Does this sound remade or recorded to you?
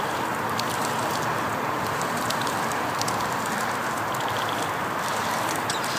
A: recorded